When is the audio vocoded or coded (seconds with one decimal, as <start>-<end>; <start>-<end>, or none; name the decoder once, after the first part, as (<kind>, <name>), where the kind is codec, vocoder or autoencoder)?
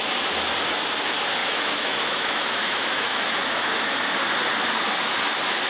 1.4-3.9 (autoencoder, DAC-VAE)